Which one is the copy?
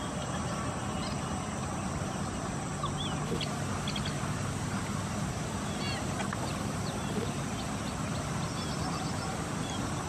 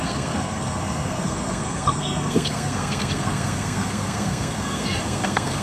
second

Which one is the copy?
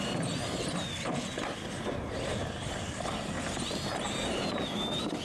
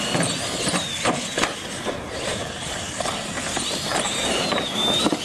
second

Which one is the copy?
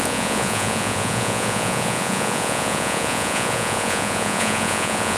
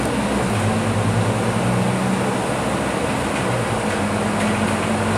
first